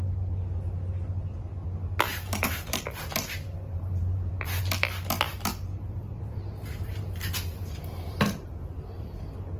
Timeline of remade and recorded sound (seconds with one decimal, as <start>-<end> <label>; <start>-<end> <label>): 0.0-2.1 recorded; 2.1-4.6 remade; 4.6-5.7 recorded; 5.7-9.0 remade; 9.0-9.6 recorded